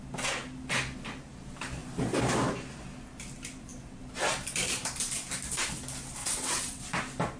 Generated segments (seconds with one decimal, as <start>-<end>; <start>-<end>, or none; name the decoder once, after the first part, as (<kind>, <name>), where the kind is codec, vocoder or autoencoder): 6.2-6.8 (vocoder, WaveNeXt)